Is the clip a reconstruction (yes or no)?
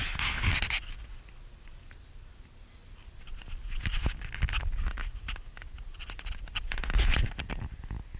no